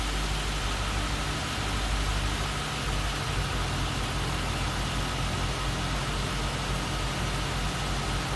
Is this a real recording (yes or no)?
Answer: yes